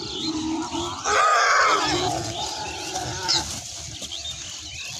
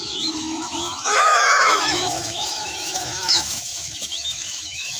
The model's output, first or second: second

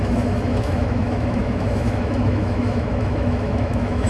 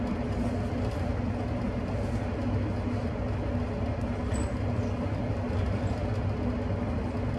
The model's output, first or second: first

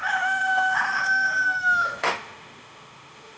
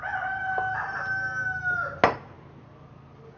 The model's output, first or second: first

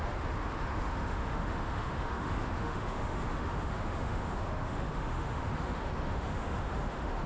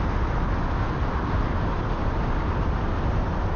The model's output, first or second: first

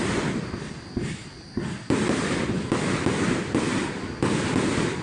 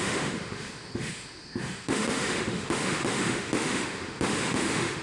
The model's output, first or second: second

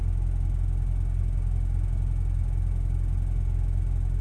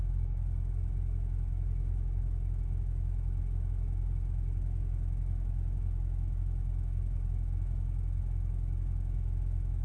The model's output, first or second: second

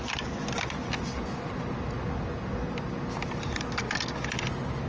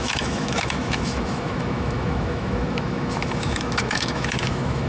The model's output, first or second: second